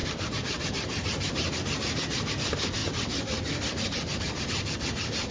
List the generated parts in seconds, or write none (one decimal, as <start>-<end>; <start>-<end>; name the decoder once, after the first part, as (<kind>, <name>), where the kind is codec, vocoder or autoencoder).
0.0-2.3 (vocoder, BigVGAN v2); 2.8-3.5